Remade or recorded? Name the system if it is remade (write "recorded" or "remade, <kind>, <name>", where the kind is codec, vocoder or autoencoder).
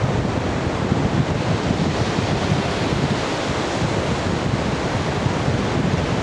recorded